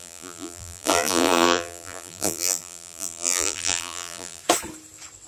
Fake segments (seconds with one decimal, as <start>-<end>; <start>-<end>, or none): 0.0-4.4